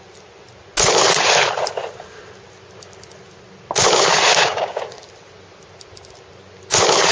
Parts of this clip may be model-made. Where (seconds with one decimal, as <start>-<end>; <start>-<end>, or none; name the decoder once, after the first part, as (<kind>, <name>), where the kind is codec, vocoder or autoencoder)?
4.3-4.8 (codec, DAC)